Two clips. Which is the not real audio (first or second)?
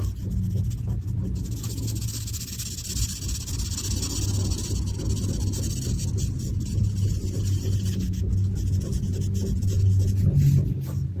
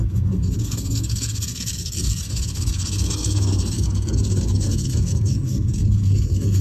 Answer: second